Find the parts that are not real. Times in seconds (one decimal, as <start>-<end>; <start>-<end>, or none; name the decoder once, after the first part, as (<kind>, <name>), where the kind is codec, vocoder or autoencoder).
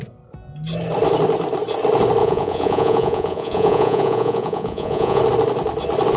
2.2-5.2 (vocoder, Vocos)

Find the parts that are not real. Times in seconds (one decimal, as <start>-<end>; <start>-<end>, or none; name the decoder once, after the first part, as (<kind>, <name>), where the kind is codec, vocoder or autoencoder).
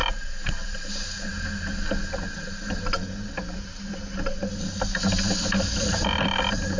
0.5-1.3 (vocoder, BigVGAN v2); 5.4-6.8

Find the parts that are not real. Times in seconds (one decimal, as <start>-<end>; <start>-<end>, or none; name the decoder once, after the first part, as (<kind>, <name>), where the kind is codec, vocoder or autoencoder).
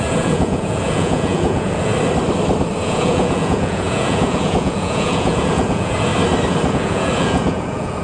0.0-1.9 (vocoder, Vocos); 2.8-6.1; 6.7-8.0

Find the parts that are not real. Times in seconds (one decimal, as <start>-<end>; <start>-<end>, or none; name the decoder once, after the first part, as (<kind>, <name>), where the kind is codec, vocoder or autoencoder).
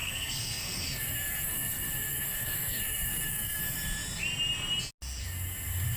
0.0-3.6 (codec, SNAC)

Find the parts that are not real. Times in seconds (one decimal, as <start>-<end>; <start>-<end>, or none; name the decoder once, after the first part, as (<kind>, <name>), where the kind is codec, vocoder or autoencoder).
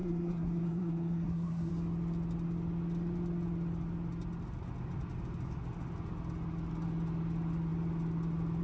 0.0-1.7 (codec, SNAC)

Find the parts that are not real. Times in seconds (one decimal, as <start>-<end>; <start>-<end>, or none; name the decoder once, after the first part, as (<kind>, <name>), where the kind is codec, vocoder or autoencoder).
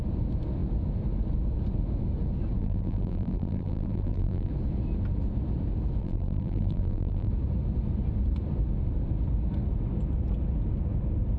2.6-4.5 (vocoder, BigVGAN v2); 6.0-7.3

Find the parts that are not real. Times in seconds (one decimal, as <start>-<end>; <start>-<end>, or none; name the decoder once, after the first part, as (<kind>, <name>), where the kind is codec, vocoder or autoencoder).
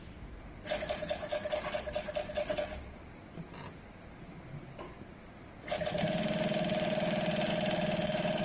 7.5-8.4 (autoencoder, DAC-VAE)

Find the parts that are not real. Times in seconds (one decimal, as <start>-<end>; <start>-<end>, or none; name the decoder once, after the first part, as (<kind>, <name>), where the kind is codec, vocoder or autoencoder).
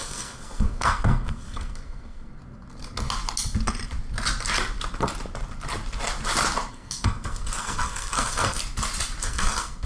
0.0-2.3 (codec, SNAC); 6.7-8.6; 9.2-9.9